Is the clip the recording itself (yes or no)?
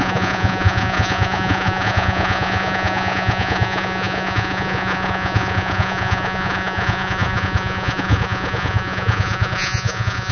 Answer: no